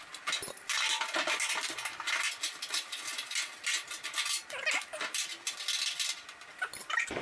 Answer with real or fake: real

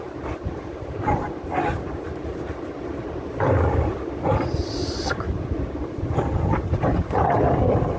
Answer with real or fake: fake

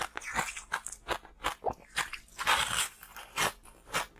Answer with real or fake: real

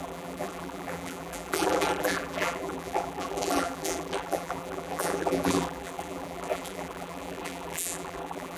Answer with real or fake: fake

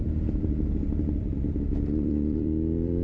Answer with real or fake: fake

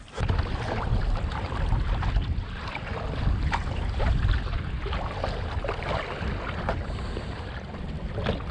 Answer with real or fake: real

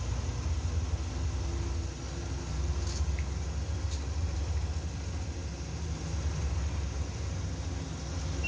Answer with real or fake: real